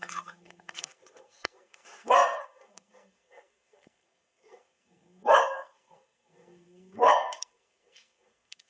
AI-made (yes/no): yes